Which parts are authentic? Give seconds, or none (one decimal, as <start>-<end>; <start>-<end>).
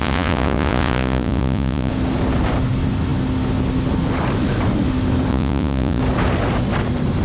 1.9-5.3; 6.0-7.2